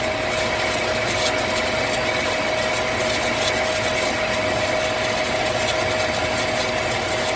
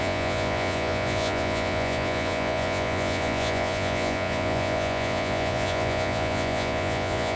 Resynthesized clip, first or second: second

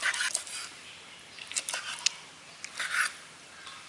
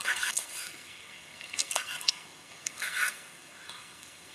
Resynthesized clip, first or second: second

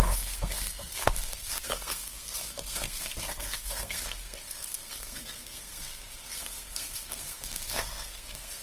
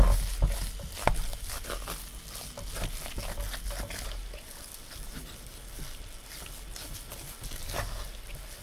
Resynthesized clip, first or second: first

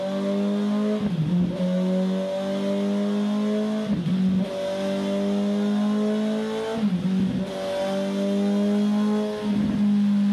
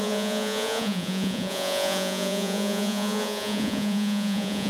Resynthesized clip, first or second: second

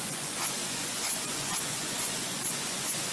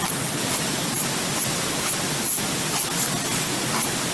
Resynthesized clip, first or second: first